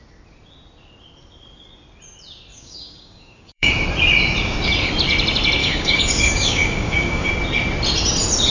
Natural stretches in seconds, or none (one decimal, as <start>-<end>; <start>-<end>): 0.0-2.5; 3.7-5.6; 7.3-8.5